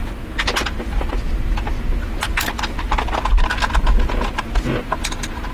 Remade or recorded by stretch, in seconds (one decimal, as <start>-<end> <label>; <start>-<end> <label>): 0.0-5.5 recorded